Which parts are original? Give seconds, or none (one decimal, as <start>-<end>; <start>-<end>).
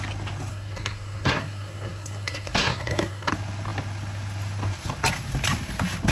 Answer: 0.0-0.5; 3.3-6.1